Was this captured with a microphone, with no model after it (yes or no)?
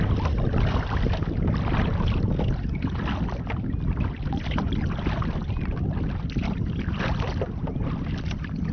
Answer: yes